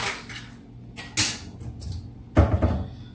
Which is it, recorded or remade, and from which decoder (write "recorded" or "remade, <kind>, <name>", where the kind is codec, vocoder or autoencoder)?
recorded